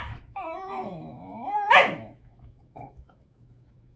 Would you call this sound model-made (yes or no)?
yes